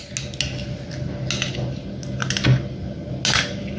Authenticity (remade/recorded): recorded